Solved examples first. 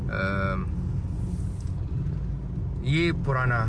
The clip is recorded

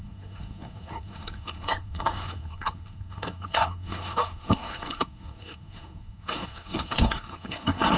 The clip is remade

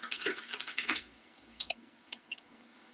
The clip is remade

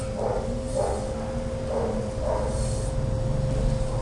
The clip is recorded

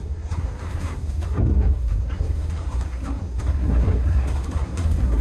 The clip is remade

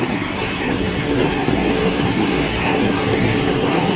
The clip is remade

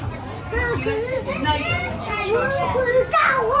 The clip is recorded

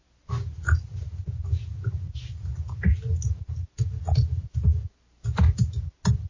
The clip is recorded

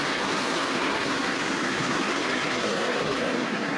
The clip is remade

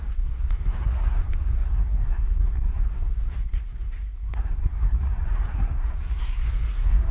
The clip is remade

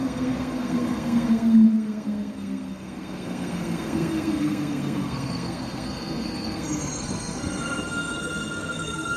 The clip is remade